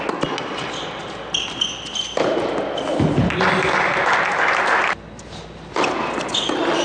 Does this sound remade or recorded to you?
recorded